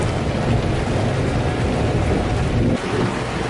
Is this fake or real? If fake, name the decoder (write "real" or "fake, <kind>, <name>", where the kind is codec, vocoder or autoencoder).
real